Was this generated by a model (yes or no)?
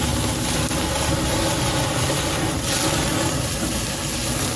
no